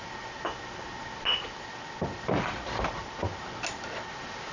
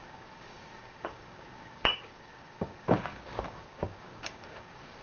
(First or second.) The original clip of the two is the first